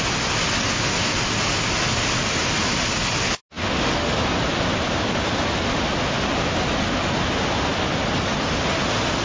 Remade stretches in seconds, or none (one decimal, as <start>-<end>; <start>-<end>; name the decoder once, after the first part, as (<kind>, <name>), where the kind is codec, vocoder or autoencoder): 3.6-4.2 (autoencoder, DAC-VAE)

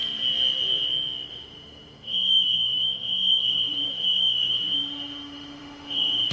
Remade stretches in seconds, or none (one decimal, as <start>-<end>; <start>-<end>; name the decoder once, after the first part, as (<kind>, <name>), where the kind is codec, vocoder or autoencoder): 1.3-6.3 (autoencoder, DAC-VAE)